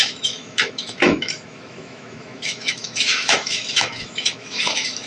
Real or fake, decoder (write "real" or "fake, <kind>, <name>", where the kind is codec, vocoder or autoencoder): fake, autoencoder, DAC-VAE